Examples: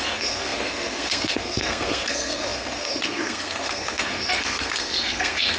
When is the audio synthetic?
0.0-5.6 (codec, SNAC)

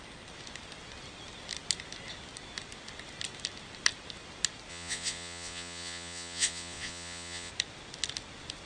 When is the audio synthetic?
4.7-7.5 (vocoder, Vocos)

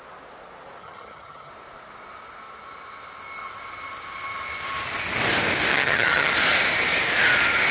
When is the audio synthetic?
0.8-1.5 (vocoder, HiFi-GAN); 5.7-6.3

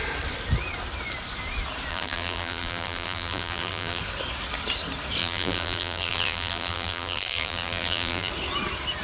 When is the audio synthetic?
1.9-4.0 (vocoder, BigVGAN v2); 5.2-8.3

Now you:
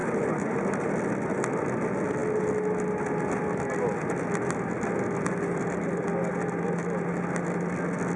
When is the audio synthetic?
none

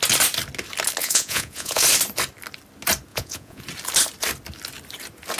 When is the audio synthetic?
1.0-1.8 (vocoder, Vocos); 3.1-3.6

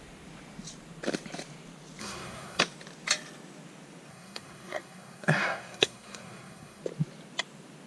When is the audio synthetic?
2.0-2.6 (codec, SNAC); 4.1-6.8

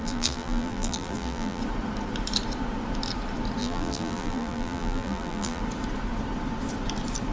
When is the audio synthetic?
0.0-1.6 (vocoder, BigVGAN v2); 3.6-5.6